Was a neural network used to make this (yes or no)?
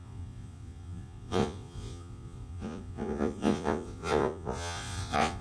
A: yes